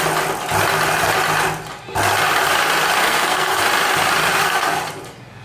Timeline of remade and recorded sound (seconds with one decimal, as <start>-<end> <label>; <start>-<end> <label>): 0.0-3.0 recorded; 3.0-3.6 remade; 3.6-4.4 recorded; 4.4-4.9 remade; 4.9-5.4 recorded

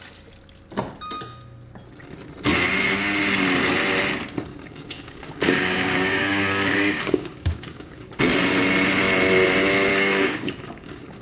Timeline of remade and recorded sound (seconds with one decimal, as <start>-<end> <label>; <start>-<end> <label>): 0.0-4.5 recorded; 4.5-8.2 remade; 8.2-9.9 recorded; 9.9-11.2 remade

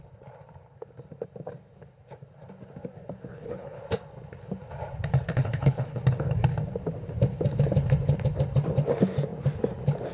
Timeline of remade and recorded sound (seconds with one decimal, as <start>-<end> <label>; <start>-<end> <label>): 0.0-3.3 recorded; 3.3-3.8 remade; 3.8-5.3 recorded; 5.3-6.0 remade; 6.0-10.1 recorded

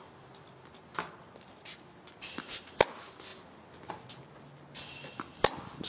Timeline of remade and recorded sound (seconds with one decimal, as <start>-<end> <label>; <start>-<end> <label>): 0.0-5.9 recorded

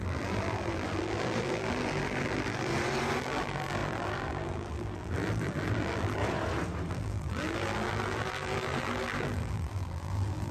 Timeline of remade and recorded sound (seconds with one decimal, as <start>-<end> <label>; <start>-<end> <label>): 0.0-2.7 remade; 2.7-3.2 recorded; 3.2-6.2 remade; 6.2-6.9 recorded; 6.9-10.5 remade